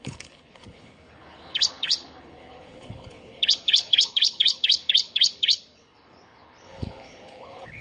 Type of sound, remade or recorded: remade